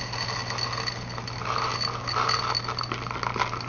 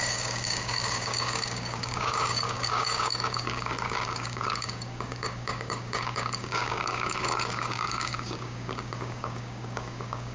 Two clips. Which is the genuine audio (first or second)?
first